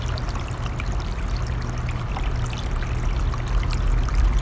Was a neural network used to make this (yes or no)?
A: no